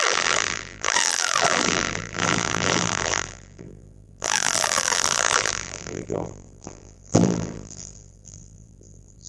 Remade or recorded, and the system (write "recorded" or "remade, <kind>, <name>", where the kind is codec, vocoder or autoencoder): remade, vocoder, BigVGAN v2